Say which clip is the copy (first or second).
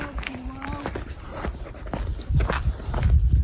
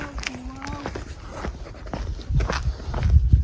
first